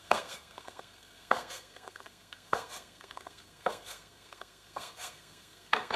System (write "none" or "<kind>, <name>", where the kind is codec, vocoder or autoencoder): codec, SNAC